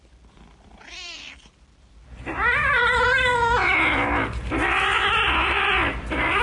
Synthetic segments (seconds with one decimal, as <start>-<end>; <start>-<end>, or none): 0.0-3.3; 4.4-6.4